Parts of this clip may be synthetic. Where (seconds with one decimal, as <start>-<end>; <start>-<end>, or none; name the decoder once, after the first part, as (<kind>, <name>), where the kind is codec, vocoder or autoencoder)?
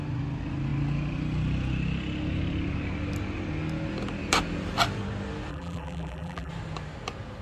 5.5-6.5 (vocoder, BigVGAN v2)